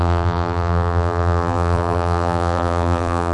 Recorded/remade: remade